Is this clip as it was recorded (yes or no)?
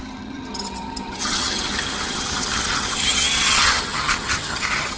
no